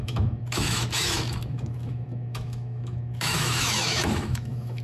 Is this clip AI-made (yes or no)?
yes